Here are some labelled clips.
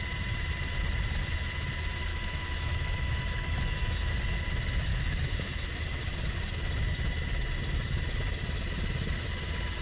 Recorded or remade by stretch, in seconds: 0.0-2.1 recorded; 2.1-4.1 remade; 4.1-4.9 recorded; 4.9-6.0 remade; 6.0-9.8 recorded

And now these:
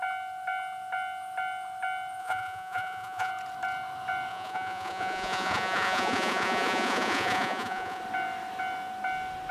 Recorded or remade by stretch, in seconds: 0.0-2.2 recorded; 2.2-3.3 remade; 3.3-4.3 recorded; 4.3-8.0 remade; 8.0-9.5 recorded

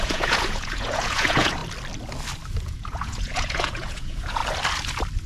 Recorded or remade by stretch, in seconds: 0.0-1.6 remade; 1.6-2.6 recorded; 2.6-4.4 remade; 4.4-5.3 recorded

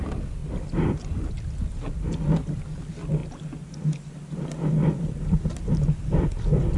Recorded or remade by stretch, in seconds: 0.0-6.8 recorded

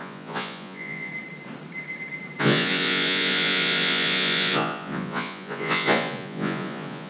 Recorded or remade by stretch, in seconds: 0.0-1.1 remade; 1.1-2.4 recorded; 2.4-7.1 remade

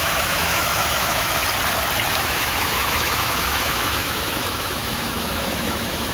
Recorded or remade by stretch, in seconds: 0.0-1.4 remade; 1.4-2.1 recorded; 2.1-6.1 remade

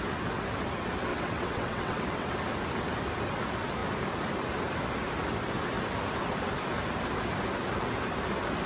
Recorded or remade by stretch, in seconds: 0.0-1.1 recorded; 1.1-2.3 remade; 2.3-8.7 recorded

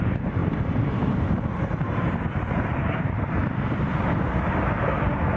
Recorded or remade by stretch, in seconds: 0.0-0.4 recorded; 0.4-1.6 remade; 1.6-3.4 recorded; 3.4-3.9 remade; 3.9-5.4 recorded